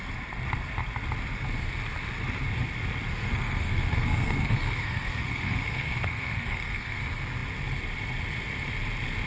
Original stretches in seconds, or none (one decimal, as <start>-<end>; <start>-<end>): 0.0-3.1; 7.0-9.3